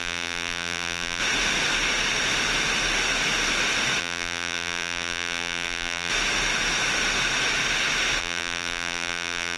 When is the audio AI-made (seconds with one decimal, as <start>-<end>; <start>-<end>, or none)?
0.0-1.2; 4.0-6.1; 8.2-9.6